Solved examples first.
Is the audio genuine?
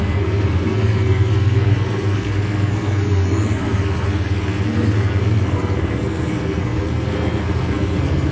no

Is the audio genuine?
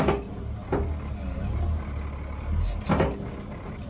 yes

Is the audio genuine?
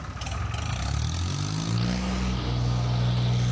yes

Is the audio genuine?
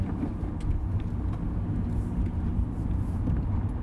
yes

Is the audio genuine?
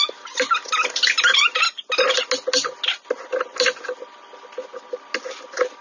yes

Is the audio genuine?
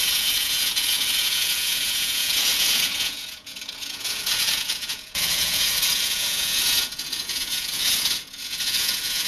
no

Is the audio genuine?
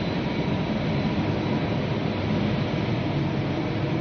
yes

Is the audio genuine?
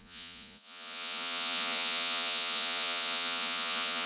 no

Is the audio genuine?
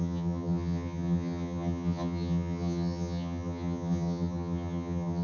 no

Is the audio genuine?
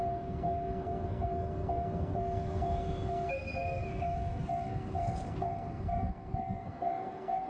no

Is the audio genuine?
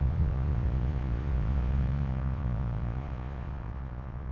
no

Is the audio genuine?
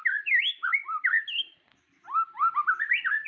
yes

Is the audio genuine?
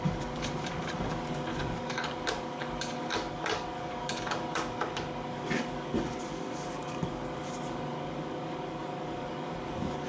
no